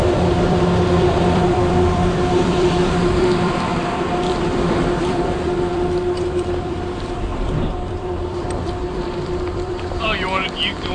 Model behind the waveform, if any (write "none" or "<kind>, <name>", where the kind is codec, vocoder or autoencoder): vocoder, BigVGAN v2